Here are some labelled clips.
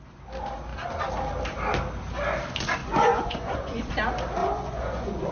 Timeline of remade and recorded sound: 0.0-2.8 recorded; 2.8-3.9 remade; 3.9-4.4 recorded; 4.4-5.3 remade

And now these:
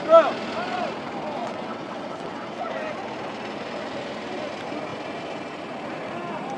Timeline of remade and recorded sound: 0.0-1.4 recorded; 1.4-2.7 remade; 2.7-6.6 recorded